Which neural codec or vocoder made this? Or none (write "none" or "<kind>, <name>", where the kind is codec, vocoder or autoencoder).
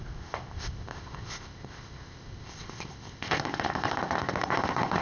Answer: codec, ZipCodec